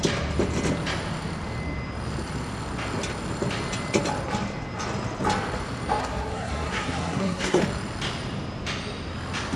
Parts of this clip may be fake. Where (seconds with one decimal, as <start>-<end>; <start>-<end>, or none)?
6.0-7.6